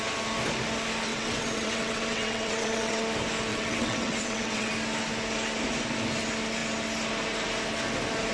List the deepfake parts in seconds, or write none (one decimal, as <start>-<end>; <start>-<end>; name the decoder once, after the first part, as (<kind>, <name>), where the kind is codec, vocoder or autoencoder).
1.1-3.0 (vocoder, WaveNeXt); 3.5-4.7